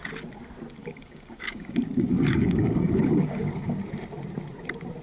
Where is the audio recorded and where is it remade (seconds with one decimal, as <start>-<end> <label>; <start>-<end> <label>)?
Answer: 0.0-0.8 recorded; 0.8-3.8 remade; 3.8-5.0 recorded